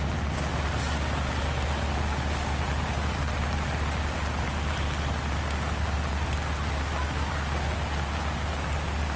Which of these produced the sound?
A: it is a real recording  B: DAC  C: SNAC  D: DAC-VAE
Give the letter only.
A